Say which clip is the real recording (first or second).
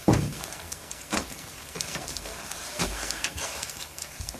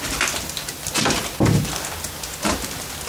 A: second